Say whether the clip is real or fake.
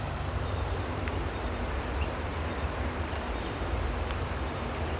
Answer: fake